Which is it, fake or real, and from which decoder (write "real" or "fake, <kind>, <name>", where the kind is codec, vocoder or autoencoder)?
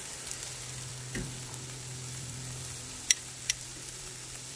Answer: fake, vocoder, BigVGAN v2